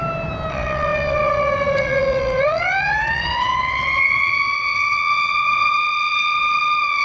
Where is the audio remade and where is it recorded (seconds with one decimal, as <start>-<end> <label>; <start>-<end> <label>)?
0.0-0.5 recorded; 0.5-7.0 remade

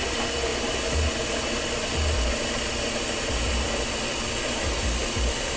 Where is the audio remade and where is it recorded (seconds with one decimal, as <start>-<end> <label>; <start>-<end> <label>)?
0.0-5.6 recorded

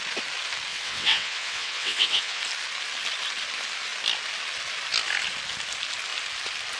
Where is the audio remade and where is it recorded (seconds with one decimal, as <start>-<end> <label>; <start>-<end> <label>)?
0.0-0.7 recorded; 0.7-2.4 remade; 2.4-6.8 recorded

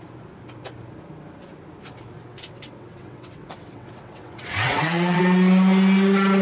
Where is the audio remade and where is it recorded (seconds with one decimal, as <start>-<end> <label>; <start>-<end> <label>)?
0.0-2.3 recorded; 2.3-5.2 remade; 5.2-6.4 recorded

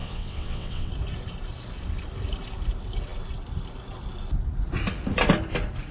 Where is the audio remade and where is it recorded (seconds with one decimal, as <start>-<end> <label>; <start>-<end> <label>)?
0.0-0.9 remade; 0.9-5.9 recorded